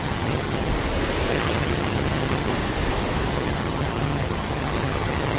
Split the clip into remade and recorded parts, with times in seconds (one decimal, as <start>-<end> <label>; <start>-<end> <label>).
0.0-0.7 remade; 0.7-1.3 recorded; 1.3-2.5 remade; 2.5-3.3 recorded; 3.3-5.4 remade